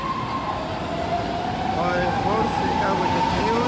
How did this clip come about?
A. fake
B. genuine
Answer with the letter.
B